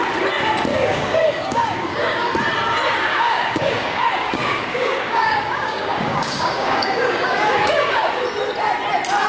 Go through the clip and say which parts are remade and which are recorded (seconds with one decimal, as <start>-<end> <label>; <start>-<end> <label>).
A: 0.0-0.7 recorded; 0.7-2.3 remade; 2.3-3.1 recorded; 3.1-8.2 remade; 8.2-9.3 recorded